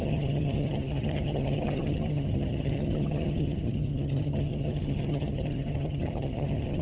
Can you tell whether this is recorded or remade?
remade